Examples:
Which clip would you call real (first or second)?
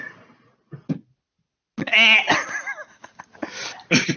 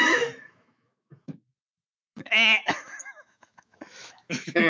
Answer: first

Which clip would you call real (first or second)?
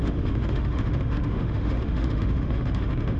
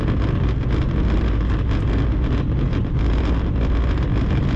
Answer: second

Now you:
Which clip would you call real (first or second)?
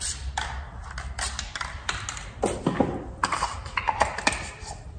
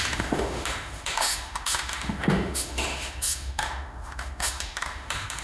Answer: first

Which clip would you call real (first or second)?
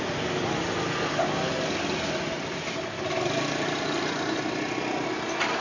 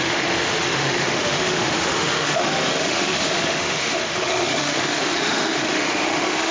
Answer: first